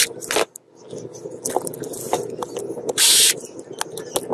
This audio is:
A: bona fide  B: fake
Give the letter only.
A